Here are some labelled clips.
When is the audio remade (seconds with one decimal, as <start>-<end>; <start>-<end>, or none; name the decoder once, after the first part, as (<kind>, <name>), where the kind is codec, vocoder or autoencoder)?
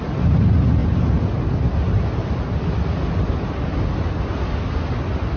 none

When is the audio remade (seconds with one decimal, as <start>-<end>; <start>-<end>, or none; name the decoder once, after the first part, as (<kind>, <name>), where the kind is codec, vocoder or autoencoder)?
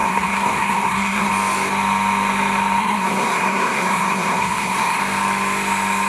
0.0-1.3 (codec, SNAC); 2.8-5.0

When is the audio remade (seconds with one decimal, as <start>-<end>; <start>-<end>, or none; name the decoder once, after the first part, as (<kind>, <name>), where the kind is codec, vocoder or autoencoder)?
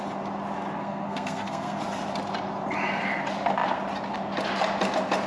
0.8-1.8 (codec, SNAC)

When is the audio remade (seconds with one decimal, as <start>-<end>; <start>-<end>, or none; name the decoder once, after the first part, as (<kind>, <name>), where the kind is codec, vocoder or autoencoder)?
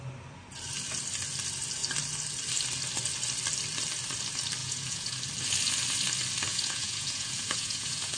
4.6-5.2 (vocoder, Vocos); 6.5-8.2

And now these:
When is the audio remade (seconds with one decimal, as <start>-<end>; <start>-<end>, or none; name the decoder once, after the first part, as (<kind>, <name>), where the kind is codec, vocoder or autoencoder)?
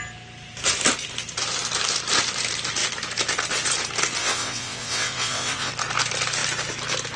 4.2-5.7 (vocoder, WaveNeXt)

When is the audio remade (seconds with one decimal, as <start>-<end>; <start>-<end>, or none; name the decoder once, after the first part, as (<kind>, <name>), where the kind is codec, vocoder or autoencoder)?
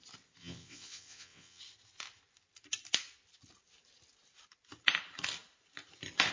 0.4-1.6 (vocoder, WaveNeXt)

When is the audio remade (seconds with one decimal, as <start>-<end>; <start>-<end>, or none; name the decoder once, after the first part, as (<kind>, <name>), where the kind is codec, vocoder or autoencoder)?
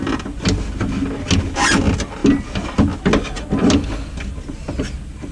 none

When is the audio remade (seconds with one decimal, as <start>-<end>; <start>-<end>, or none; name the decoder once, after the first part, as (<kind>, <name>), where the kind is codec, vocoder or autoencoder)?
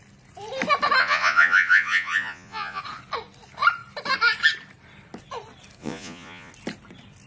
1.0-2.8 (vocoder, Vocos); 5.8-6.5